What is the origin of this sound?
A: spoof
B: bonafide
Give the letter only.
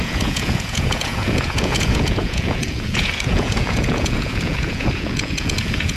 A